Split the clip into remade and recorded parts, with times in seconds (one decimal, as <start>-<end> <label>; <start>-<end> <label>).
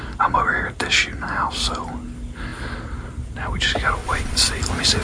0.0-4.0 recorded; 4.0-4.6 remade; 4.6-5.0 recorded